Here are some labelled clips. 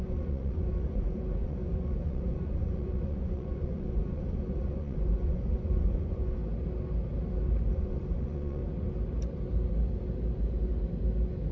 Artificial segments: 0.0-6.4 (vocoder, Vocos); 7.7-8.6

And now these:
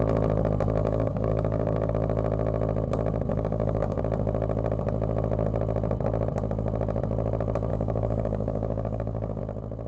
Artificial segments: 0.8-1.9 (codec, DAC); 3.3-4.0; 7.7-9.4